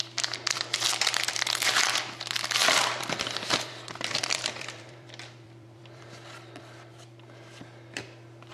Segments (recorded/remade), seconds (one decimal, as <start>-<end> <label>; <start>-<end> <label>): 0.0-2.6 recorded; 2.6-6.6 remade; 6.6-8.5 recorded